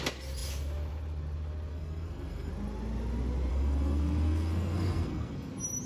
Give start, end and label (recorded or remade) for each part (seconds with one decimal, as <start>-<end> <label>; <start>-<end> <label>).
0.0-1.7 recorded; 1.7-2.5 remade; 2.5-3.5 recorded; 3.5-5.5 remade; 5.5-5.9 recorded